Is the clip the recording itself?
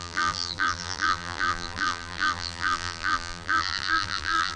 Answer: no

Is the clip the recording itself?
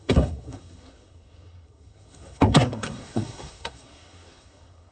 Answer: no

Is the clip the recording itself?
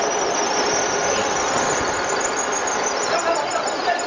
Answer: yes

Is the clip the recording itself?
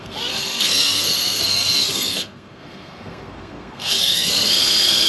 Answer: no